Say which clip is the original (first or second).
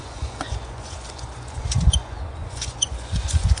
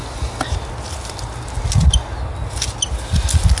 second